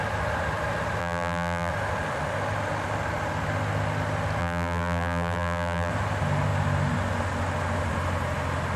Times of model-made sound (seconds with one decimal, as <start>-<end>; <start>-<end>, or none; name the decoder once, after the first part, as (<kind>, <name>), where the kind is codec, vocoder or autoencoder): 1.0-1.7 (vocoder, BigVGAN v2); 4.4-5.9